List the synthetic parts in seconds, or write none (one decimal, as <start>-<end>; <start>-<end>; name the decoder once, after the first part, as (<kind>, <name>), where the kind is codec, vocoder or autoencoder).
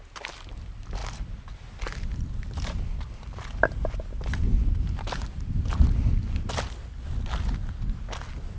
none